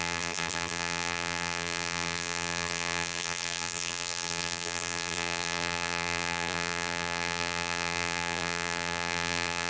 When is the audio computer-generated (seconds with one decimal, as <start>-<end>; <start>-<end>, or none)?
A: 0.0-9.7